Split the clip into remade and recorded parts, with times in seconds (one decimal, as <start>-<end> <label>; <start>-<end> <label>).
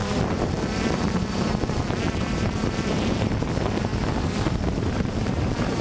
0.0-3.9 remade; 3.9-4.7 recorded; 4.7-5.8 remade